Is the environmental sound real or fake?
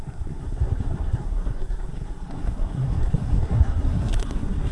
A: fake